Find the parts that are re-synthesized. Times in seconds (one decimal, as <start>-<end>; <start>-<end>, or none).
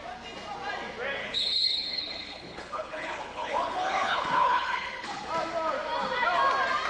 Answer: 1.2-5.3